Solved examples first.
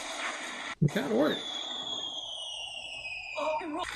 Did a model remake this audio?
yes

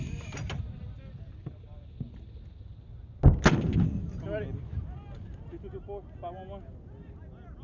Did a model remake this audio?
no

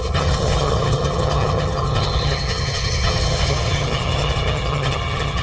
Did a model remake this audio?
yes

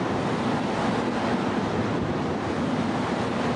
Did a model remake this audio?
yes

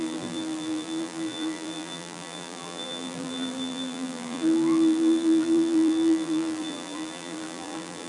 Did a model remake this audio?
yes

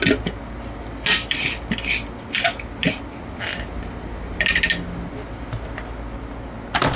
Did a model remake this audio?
no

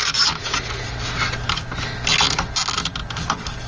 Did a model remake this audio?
no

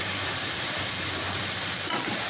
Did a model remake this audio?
yes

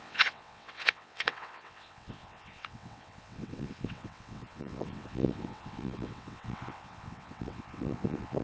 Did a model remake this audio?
yes